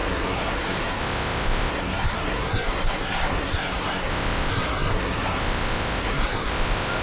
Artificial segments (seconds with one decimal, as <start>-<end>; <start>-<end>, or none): 0.0-1.0; 1.7-4.1; 4.5-5.4; 6.0-6.5